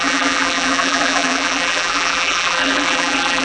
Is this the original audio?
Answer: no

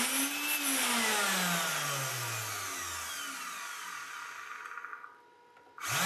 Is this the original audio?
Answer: yes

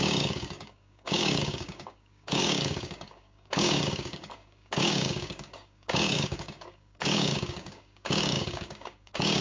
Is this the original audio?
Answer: no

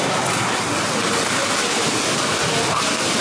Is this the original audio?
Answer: yes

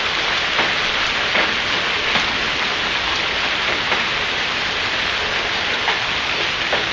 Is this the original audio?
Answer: yes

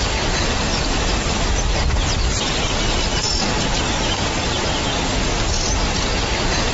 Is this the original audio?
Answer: yes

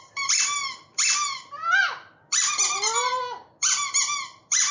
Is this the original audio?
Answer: yes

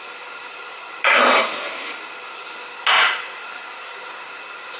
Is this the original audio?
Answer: yes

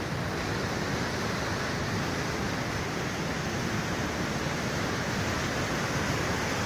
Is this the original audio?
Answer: no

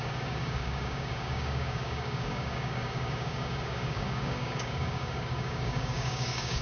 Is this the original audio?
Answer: no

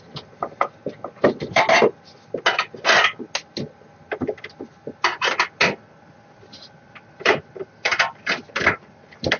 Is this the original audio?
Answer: yes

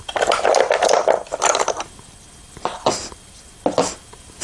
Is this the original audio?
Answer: yes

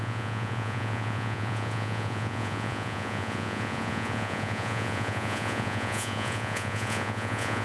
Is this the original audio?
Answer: no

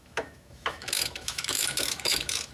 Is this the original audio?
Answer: no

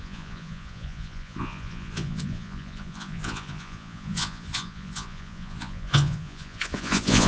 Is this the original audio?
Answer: no